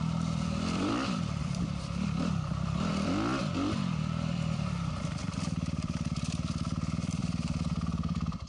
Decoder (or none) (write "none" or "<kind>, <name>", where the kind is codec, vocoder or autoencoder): vocoder, BigVGAN v2